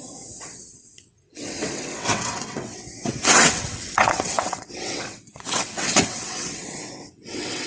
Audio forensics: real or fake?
fake